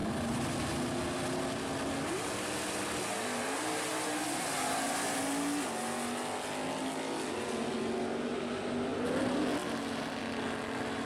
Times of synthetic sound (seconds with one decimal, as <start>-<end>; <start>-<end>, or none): none